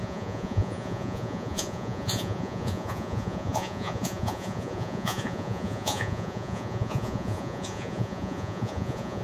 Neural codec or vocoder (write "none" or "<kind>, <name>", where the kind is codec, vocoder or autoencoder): vocoder, Vocos